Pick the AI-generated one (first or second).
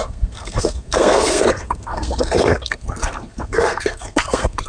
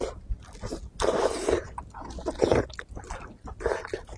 first